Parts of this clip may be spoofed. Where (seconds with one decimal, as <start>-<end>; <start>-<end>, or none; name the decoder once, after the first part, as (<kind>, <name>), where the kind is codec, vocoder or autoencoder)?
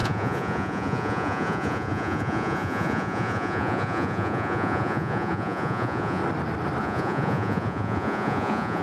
0.0-6.2 (vocoder, Vocos); 6.8-8.8